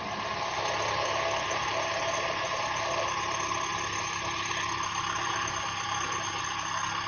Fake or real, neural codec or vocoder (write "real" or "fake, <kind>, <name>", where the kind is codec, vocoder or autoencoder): real